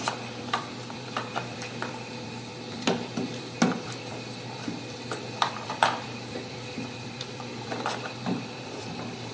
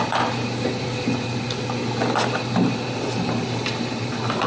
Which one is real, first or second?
second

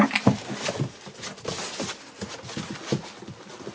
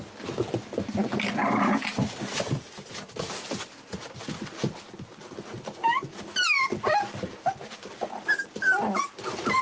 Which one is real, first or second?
first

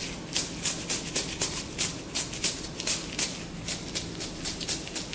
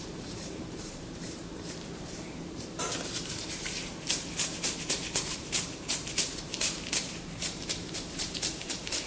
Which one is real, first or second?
first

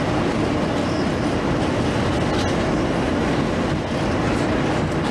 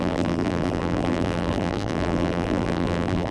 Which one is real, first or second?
first